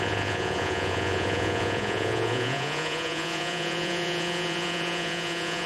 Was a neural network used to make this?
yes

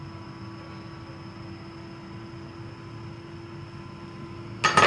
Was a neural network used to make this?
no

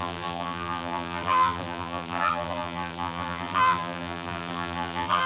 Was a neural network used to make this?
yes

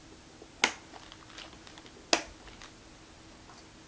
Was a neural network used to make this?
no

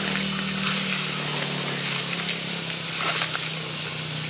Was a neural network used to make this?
no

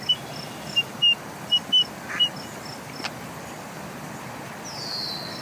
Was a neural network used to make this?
no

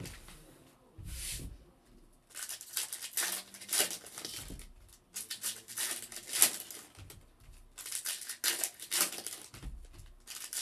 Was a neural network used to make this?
no